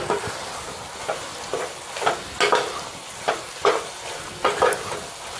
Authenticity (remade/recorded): recorded